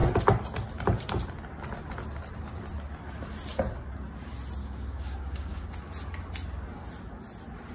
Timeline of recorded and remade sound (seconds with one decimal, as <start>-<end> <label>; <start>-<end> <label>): 0.0-4.6 recorded; 4.6-5.7 remade; 5.7-7.7 recorded